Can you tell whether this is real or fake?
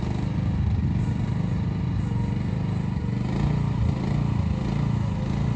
real